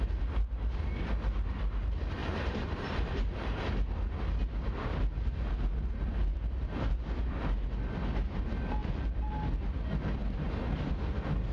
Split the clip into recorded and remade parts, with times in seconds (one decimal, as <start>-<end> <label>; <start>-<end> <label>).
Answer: 0.0-2.2 recorded; 2.2-3.6 remade; 3.6-8.8 recorded; 8.8-9.3 remade; 9.3-11.5 recorded